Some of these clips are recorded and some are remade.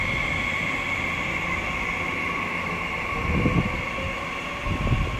recorded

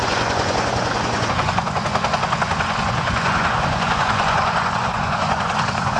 remade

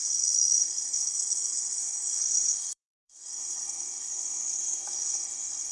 remade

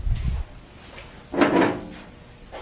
recorded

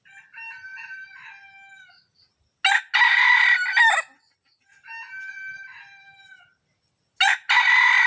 recorded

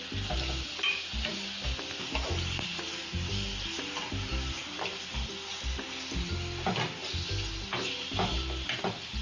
recorded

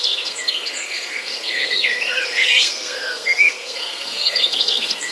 remade